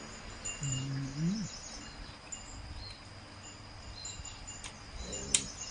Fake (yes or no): no